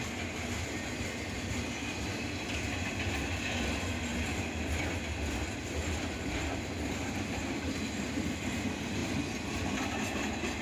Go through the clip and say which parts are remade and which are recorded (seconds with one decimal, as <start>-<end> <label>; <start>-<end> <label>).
0.0-10.6 recorded